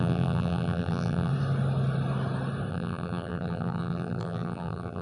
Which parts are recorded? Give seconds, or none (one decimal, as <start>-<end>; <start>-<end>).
1.3-2.7